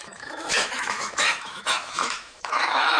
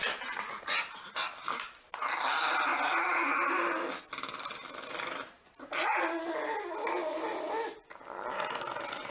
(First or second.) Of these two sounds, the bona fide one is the second